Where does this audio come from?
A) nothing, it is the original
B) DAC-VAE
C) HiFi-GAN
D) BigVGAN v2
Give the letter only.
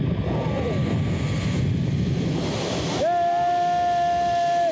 A